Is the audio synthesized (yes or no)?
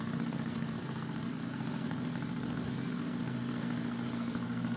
yes